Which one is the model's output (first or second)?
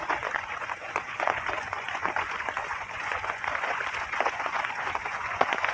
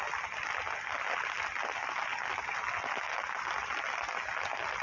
first